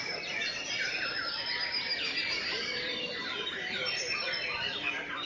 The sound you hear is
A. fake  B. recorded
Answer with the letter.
A